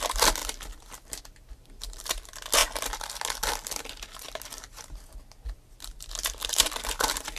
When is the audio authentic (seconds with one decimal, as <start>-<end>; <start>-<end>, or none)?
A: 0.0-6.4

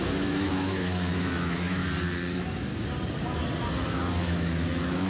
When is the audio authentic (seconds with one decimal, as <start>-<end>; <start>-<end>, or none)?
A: 1.8-2.3; 2.7-3.9

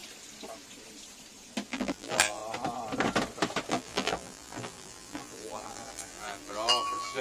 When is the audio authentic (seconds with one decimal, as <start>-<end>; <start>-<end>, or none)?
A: 0.0-1.7; 2.4-3.7